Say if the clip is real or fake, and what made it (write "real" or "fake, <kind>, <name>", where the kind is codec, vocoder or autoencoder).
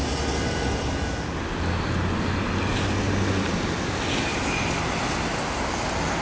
real